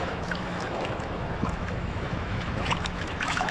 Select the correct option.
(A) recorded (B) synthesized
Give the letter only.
B